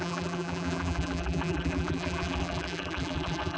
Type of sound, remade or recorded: remade